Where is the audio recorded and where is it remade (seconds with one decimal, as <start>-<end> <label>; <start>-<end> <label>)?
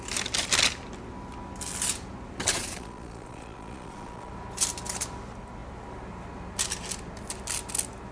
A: 0.0-2.5 recorded; 2.5-4.3 remade; 4.3-8.1 recorded